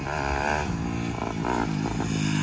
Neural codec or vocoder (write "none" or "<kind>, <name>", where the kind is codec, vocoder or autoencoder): none